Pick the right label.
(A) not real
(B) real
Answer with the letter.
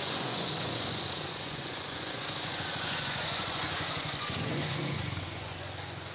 A